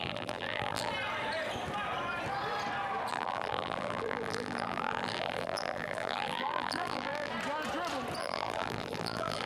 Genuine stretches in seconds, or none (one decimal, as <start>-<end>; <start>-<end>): 0.9-3.1; 7.3-8.2